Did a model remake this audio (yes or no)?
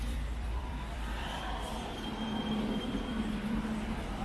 yes